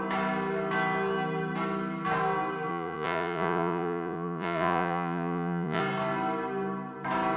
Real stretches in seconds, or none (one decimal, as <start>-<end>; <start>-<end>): 0.0-2.7; 5.8-7.4